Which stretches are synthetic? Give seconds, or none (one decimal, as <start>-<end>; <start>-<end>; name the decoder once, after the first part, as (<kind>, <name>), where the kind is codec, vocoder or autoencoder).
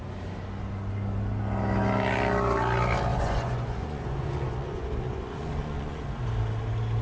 3.1-6.0 (vocoder, Vocos)